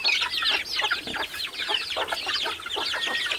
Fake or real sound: real